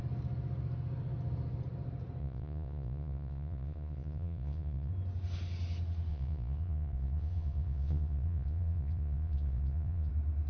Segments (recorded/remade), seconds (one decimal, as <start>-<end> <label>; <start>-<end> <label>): 0.0-2.2 recorded; 2.2-4.9 remade; 4.9-6.1 recorded; 6.1-10.1 remade; 10.1-10.5 recorded